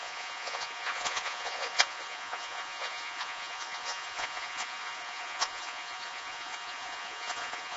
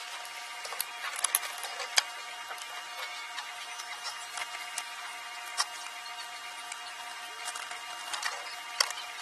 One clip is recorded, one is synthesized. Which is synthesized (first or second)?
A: first